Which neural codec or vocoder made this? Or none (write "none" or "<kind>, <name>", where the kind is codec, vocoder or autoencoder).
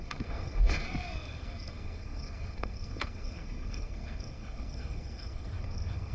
codec, SNAC